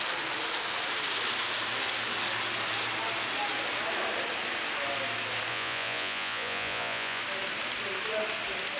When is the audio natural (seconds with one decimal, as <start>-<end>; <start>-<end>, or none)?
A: 0.0-5.5; 7.2-8.8